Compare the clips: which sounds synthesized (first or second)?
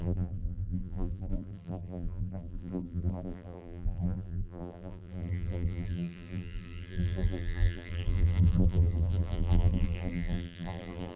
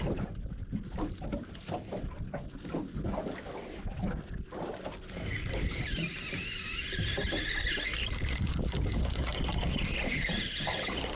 first